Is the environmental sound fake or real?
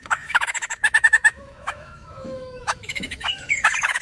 fake